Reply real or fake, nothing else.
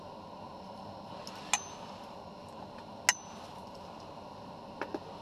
real